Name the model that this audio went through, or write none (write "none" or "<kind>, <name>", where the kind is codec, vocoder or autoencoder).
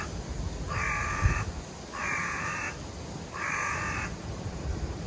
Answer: none